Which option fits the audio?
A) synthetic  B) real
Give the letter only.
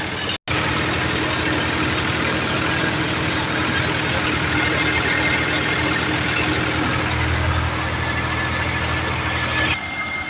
B